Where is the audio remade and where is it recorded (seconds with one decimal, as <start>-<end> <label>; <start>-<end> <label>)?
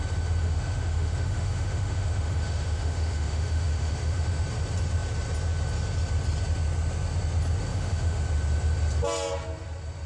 0.0-0.4 recorded; 0.4-4.4 remade; 4.4-7.7 recorded; 7.7-8.2 remade; 8.2-10.1 recorded